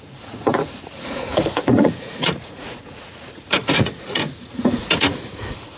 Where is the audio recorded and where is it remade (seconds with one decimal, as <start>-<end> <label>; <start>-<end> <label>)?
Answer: 0.0-5.8 remade